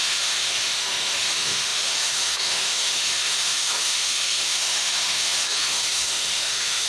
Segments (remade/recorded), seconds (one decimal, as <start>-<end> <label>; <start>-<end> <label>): 0.0-6.9 remade